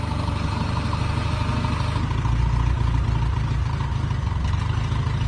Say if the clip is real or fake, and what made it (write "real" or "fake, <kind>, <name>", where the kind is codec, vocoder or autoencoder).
real